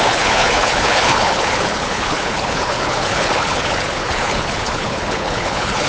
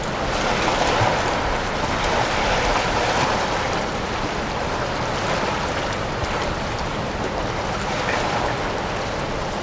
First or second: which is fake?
first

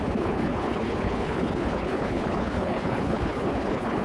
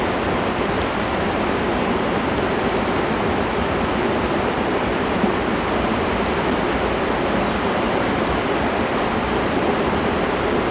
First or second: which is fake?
first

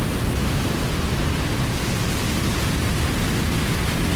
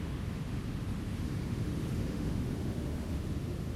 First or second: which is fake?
second